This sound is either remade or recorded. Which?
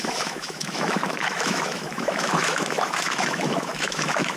remade